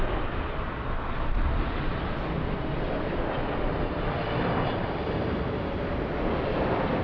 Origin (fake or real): real